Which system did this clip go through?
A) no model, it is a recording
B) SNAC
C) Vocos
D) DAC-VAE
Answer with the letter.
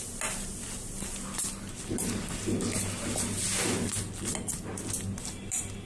A